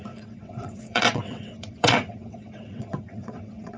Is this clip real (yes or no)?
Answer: no